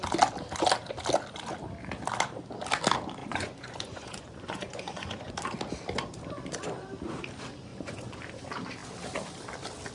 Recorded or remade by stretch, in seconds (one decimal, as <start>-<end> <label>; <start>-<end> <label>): 0.0-3.2 recorded; 3.2-5.3 remade; 5.3-7.7 recorded; 7.7-8.2 remade; 8.2-9.9 recorded